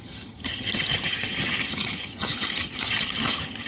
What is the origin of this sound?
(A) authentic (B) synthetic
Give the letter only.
B